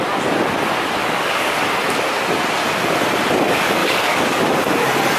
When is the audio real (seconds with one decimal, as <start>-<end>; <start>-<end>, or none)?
0.0-1.0; 1.7-3.8; 4.5-5.2